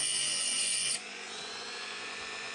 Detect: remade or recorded remade